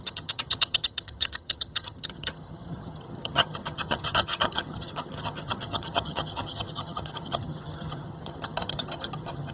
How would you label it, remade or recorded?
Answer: remade